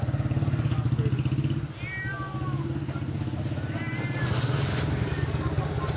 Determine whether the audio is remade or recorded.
recorded